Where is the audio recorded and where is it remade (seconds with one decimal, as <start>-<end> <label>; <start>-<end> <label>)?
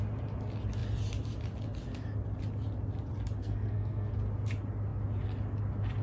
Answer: 0.0-3.4 recorded; 3.4-4.1 remade; 4.1-6.0 recorded